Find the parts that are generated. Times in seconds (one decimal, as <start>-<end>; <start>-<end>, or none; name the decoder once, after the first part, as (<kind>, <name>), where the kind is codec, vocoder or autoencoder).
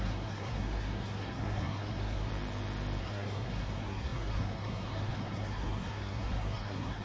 0.0-2.3 (codec, SNAC); 3.0-7.0